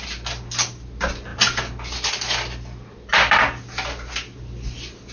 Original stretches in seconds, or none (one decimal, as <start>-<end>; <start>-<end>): 0.0-5.1